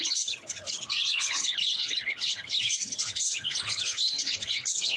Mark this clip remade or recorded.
remade